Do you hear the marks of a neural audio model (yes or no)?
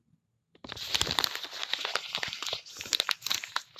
no